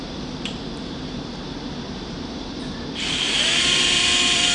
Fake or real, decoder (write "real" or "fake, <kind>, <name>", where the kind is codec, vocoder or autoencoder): fake, vocoder, BigVGAN v2